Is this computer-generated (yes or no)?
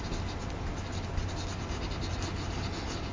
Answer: no